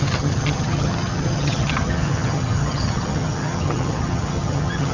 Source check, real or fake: fake